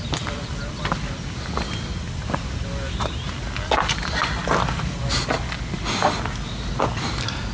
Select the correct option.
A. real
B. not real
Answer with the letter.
A